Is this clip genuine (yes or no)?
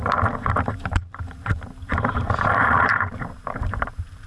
no